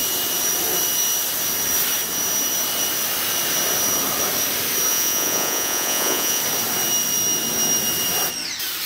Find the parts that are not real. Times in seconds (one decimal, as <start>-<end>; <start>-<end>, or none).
4.9-6.4